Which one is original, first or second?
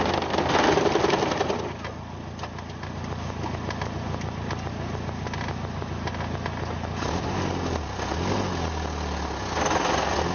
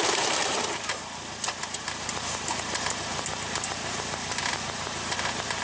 first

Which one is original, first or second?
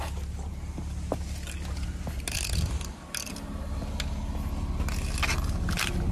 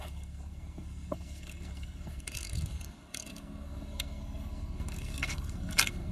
first